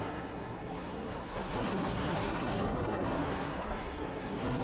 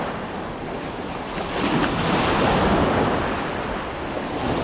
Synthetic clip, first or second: first